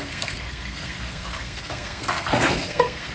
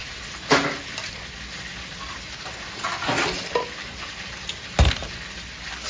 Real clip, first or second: second